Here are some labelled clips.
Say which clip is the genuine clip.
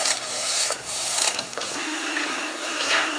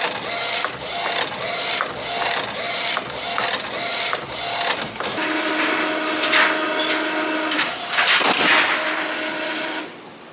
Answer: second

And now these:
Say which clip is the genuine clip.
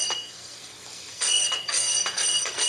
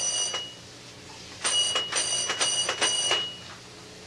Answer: second